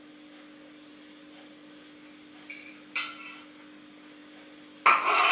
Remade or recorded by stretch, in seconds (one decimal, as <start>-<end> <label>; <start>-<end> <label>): 0.0-5.3 recorded